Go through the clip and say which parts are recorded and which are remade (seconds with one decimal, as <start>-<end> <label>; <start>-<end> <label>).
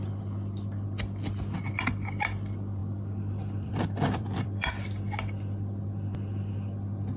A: 0.0-2.8 recorded; 2.8-4.7 remade; 4.7-7.2 recorded